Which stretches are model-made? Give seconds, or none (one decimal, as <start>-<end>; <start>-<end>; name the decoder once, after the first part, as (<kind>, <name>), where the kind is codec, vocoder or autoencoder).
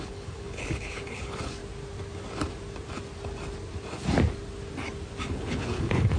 0.0-1.6 (codec, HILCodec); 5.3-6.2